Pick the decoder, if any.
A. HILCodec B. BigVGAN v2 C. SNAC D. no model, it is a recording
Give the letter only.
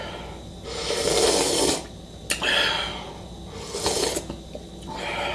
D